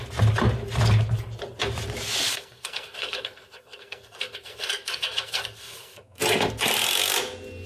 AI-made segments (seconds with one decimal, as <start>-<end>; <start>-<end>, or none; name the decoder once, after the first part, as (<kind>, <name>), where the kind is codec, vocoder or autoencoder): 2.3-6.2 (codec, SNAC)